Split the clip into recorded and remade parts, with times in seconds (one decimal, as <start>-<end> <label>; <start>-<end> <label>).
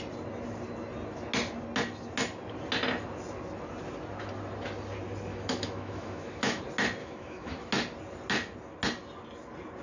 0.0-5.3 recorded; 5.3-6.6 remade; 6.6-7.0 recorded; 7.0-7.7 remade; 7.7-9.8 recorded